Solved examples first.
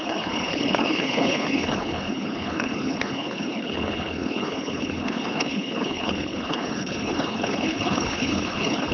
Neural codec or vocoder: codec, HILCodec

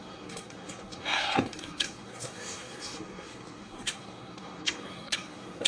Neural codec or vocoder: codec, SNAC